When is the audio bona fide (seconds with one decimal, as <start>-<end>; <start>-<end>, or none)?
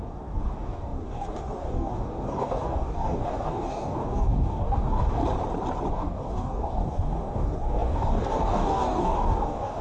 5.2-5.9